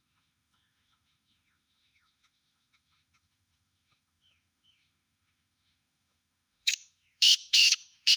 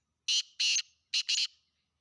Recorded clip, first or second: second